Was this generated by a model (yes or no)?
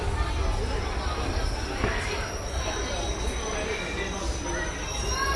no